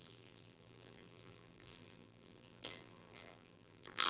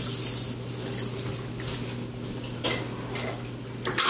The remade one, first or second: first